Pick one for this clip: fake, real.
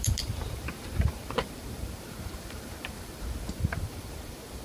fake